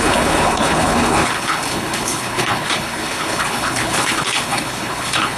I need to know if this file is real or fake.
fake